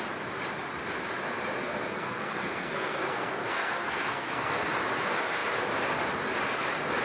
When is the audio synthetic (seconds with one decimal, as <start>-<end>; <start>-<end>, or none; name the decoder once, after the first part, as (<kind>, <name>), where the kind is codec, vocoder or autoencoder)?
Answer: 1.6-4.6 (codec, SNAC)